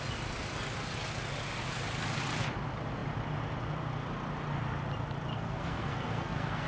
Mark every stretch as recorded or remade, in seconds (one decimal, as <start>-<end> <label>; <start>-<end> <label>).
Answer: 0.0-5.3 recorded; 5.3-6.7 remade